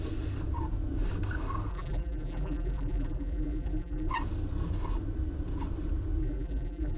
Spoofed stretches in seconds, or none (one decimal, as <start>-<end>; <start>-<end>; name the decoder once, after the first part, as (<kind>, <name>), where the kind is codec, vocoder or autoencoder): 1.7-4.1 (vocoder, BigVGAN v2); 6.2-7.0